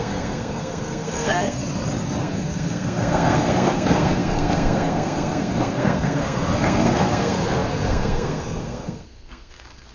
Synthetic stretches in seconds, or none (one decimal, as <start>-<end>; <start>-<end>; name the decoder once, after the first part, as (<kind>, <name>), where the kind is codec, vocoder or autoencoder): 0.0-1.6 (codec, SNAC); 2.2-9.9